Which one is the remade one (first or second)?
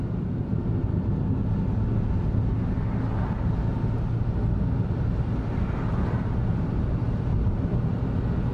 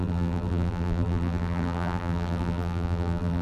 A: second